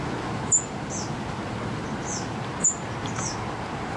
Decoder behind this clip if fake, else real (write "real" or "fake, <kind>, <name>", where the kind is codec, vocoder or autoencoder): real